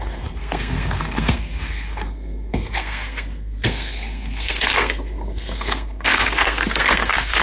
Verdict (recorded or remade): remade